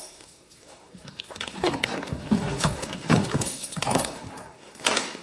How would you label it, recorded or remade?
remade